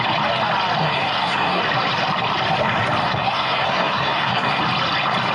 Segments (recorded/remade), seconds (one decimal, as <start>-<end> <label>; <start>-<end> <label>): 0.0-0.8 recorded; 0.8-1.6 remade; 1.6-3.0 recorded; 3.0-4.6 remade; 4.6-5.3 recorded